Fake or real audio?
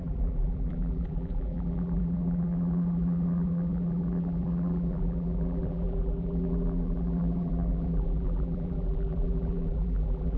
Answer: fake